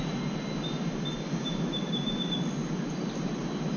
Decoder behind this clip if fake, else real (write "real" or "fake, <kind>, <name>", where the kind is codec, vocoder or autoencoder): real